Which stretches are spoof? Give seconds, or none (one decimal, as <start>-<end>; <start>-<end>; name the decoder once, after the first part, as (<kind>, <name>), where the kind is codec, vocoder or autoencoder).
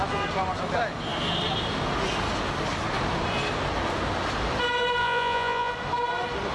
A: 5.0-5.7 (vocoder, Vocos)